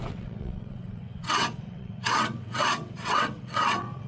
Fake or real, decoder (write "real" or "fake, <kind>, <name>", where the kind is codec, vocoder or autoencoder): fake, vocoder, WaveNeXt